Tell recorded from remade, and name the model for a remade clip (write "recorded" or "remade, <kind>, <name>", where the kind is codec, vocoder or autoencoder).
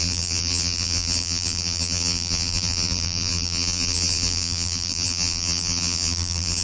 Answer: remade, vocoder, BigVGAN v2